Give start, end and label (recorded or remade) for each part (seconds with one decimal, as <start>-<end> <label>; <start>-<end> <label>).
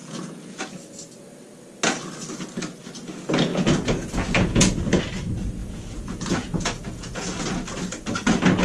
0.0-0.6 remade; 0.6-3.5 recorded; 3.5-5.0 remade; 5.0-5.6 recorded; 5.6-7.4 remade; 7.4-8.6 recorded